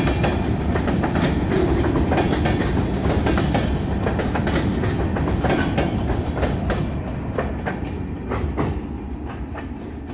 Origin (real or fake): real